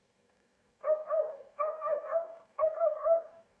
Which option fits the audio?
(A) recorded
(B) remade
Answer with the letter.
B